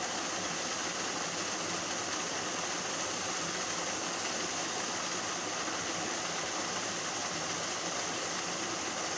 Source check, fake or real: real